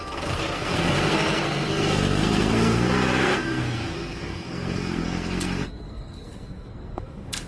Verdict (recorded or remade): remade